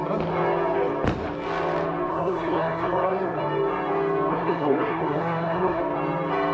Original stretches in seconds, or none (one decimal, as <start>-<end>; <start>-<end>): 0.0-2.1; 3.4-4.3; 5.8-6.5

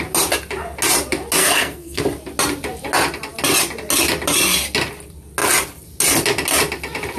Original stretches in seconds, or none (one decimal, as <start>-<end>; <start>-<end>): 0.0-1.4; 2.0-7.2

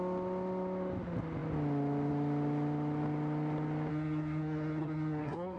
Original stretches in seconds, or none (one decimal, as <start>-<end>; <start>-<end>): 0.0-3.9

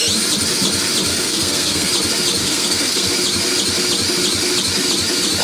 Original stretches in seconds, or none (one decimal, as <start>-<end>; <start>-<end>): 0.0-1.1; 1.9-2.4; 3.1-5.4

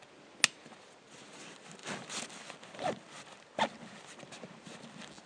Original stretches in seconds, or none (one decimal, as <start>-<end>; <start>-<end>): 0.0-5.3

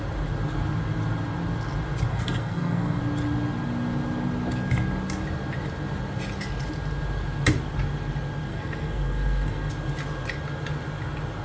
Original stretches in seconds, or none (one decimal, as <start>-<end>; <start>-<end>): 0.0-2.1; 3.0-8.5; 9.7-11.4

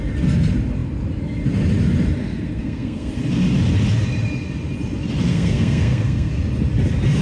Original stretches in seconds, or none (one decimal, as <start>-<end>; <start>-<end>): 0.0-2.2; 3.1-5.3; 6.3-7.2